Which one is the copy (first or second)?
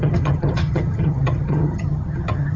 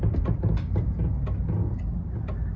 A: first